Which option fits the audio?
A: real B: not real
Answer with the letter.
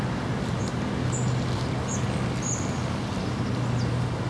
A